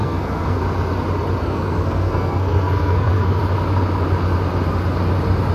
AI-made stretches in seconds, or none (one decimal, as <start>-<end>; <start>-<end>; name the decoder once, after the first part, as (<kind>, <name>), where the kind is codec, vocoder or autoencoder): 0.0-0.6 (codec, SNAC); 1.4-3.4

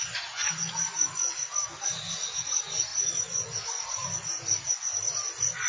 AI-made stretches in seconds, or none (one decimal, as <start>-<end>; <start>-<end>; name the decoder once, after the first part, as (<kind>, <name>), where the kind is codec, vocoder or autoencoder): none

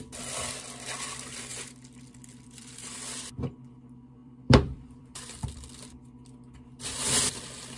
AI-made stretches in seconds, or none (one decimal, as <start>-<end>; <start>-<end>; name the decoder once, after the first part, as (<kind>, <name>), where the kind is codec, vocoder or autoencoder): 1.5-3.0 (vocoder, BigVGAN v2); 4.2-5.5

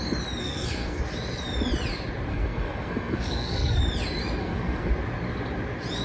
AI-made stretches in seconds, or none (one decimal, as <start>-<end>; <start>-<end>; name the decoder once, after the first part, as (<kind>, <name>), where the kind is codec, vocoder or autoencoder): 0.4-1.0 (codec, SNAC); 2.3-3.8; 4.4-4.9

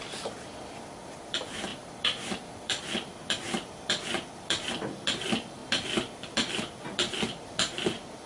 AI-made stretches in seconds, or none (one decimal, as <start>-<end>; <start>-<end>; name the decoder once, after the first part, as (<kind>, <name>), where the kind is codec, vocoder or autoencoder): 0.0-8.3 (vocoder, BigVGAN v2)

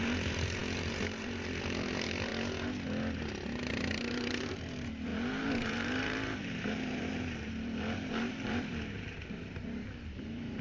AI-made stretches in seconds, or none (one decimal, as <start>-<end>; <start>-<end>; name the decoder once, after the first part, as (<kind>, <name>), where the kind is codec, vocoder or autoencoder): 0.0-2.3 (vocoder, BigVGAN v2); 3.5-10.6